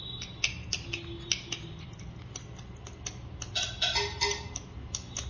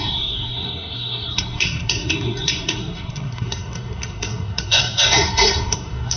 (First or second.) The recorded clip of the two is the first